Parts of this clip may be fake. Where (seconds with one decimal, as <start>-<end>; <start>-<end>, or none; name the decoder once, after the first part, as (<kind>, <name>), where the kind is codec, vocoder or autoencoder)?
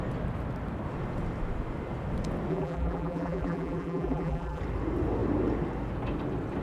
2.5-4.6 (vocoder, BigVGAN v2)